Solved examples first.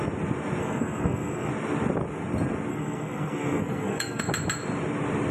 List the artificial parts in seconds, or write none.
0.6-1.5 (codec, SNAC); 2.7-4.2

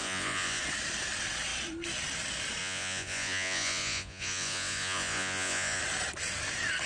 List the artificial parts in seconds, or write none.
0.0-0.6 (vocoder, Vocos); 2.6-5.8

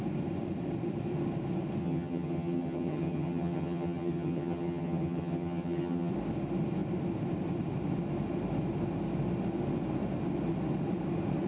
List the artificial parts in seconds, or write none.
1.8-6.1 (vocoder, HiFi-GAN)

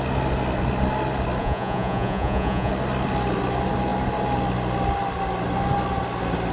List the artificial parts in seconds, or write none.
1.4-2.7 (vocoder, Vocos)

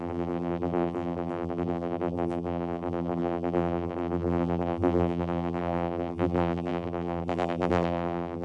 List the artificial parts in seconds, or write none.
0.0-8.4 (vocoder, BigVGAN v2)

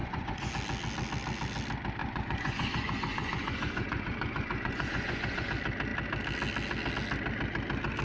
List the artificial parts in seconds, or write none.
0.0-0.5 (vocoder, Vocos); 2.0-5.5

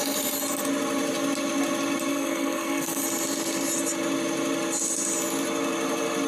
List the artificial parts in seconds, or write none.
2.1-3.0 (codec, SNAC)

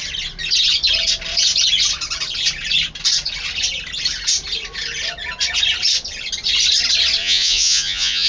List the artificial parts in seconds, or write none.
7.2-8.3 (vocoder, Vocos)